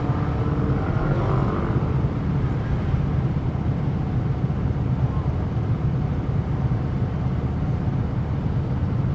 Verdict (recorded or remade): recorded